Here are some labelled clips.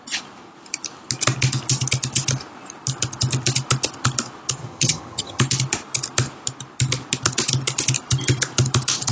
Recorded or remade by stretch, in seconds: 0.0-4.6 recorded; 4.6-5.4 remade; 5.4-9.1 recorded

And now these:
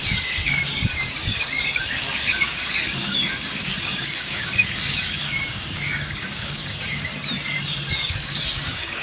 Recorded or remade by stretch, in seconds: 0.0-7.1 remade; 7.1-7.9 recorded; 7.9-9.0 remade

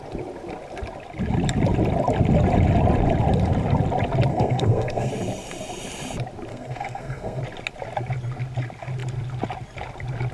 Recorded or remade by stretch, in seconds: 0.0-4.3 recorded; 4.3-5.1 remade; 5.1-6.5 recorded; 6.5-7.4 remade; 7.4-10.3 recorded